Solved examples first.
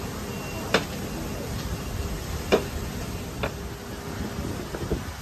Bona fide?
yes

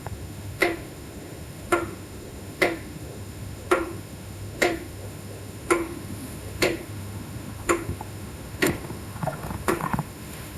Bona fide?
no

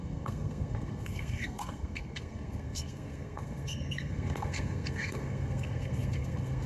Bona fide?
no